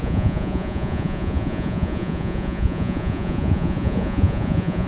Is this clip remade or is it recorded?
remade